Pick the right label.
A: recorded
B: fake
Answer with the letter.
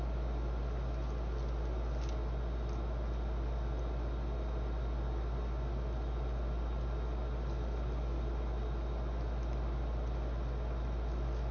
A